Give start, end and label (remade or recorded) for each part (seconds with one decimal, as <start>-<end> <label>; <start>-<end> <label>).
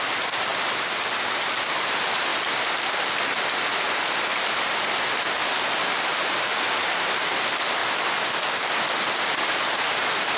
0.0-0.5 remade; 0.5-1.3 recorded; 1.3-2.3 remade; 2.3-4.2 recorded; 4.2-5.4 remade; 5.4-6.1 recorded; 6.1-7.8 remade; 7.8-9.4 recorded; 9.4-10.4 remade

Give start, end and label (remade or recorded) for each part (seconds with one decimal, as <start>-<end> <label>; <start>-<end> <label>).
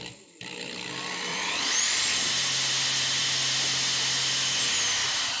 0.0-1.3 recorded; 1.3-2.3 remade; 2.3-5.4 recorded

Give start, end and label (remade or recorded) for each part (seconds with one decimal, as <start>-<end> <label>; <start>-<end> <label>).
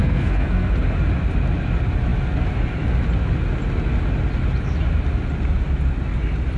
0.0-0.7 remade; 0.7-6.6 recorded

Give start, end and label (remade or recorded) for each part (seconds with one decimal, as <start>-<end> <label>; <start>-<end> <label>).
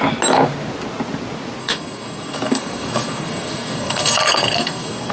0.0-1.6 recorded; 1.6-5.1 remade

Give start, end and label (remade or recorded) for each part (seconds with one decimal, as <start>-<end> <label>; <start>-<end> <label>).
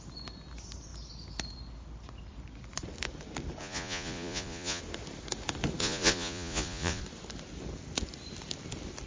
0.0-3.6 recorded; 3.6-4.8 remade; 4.8-5.8 recorded; 5.8-7.0 remade; 7.0-9.1 recorded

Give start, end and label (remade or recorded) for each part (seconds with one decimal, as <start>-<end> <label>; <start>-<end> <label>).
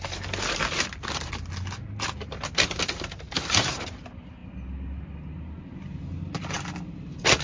0.0-7.4 recorded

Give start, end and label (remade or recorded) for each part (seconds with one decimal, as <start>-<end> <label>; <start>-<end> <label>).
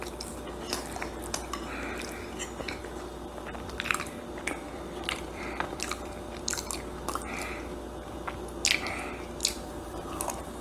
0.0-4.6 recorded; 4.6-6.1 remade; 6.1-10.6 recorded